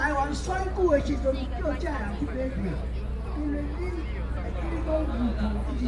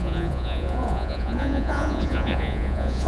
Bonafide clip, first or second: first